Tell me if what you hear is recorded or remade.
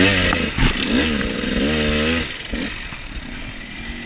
recorded